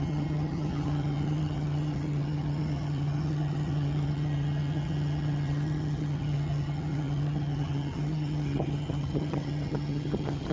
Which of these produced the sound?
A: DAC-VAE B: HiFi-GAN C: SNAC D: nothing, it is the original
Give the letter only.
B